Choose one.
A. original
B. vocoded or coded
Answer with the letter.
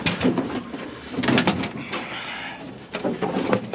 A